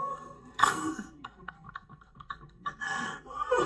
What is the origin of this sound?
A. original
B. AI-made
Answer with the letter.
B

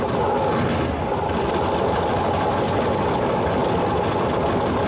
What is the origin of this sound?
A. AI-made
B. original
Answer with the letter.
B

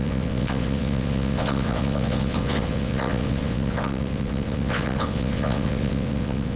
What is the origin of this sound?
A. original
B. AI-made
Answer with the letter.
B